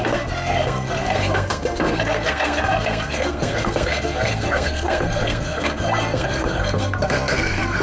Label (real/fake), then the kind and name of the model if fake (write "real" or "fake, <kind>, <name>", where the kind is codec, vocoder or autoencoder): fake, codec, SNAC